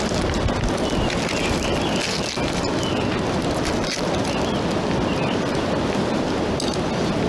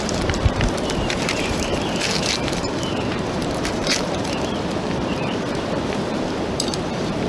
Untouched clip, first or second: first